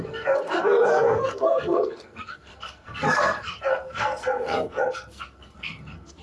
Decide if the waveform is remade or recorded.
remade